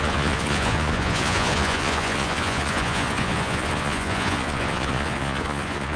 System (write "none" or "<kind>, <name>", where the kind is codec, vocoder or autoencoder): vocoder, Vocos